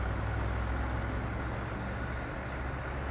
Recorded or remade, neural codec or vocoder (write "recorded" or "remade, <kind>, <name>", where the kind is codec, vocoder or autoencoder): recorded